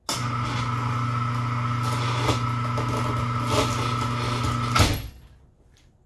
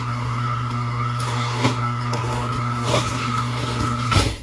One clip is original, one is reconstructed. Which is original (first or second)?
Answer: first